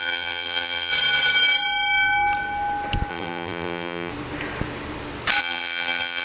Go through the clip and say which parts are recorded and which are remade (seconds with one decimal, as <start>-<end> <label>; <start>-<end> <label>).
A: 0.0-0.9 remade; 0.9-3.1 recorded; 3.1-4.1 remade; 4.1-5.4 recorded; 5.4-6.2 remade

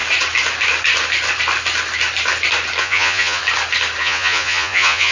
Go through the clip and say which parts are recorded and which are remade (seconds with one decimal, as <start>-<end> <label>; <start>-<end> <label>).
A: 0.0-2.8 recorded; 2.8-3.4 remade; 3.4-4.0 recorded; 4.0-5.1 remade

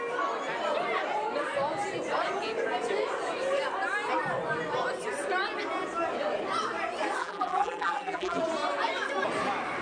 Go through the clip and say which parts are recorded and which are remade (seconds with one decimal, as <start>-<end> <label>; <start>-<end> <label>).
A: 0.0-7.2 recorded; 7.2-8.4 remade; 8.4-9.8 recorded